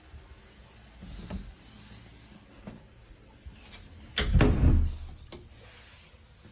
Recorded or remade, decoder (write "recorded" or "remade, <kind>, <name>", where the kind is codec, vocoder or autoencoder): recorded